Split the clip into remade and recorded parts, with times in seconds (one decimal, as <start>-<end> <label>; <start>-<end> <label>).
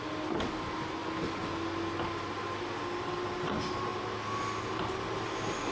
0.0-5.7 recorded